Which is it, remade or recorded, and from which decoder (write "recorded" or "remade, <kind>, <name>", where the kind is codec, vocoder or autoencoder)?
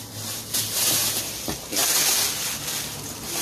recorded